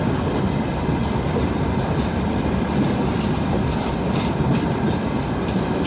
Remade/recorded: remade